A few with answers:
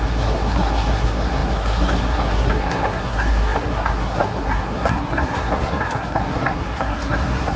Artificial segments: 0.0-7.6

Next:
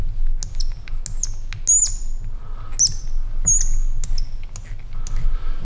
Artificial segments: none